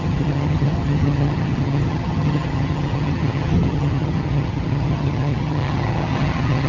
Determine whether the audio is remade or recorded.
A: remade